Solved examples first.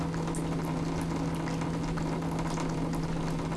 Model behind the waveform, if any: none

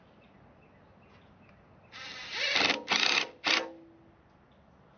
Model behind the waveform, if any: none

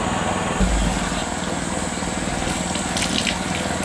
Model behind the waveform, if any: none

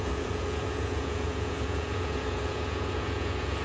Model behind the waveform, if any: vocoder, Vocos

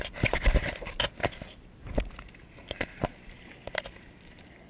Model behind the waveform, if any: none